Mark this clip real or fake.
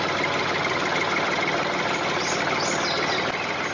real